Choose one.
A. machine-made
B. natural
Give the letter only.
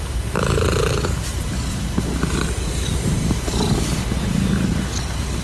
B